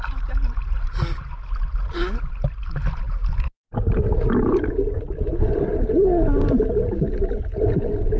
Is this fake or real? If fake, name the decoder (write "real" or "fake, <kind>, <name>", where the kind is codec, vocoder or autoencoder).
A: real